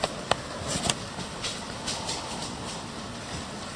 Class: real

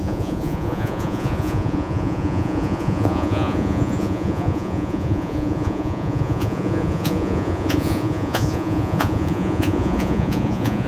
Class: fake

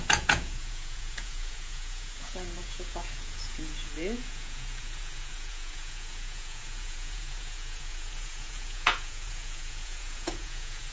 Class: fake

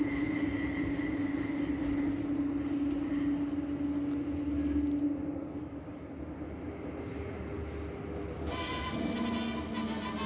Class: real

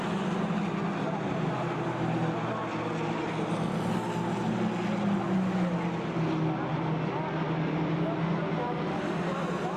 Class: real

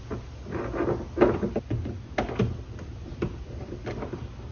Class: real